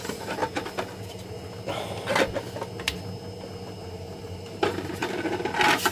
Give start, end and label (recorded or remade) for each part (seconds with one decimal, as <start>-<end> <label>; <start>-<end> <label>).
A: 0.0-0.4 remade; 0.4-3.9 recorded; 3.9-5.0 remade; 5.0-5.9 recorded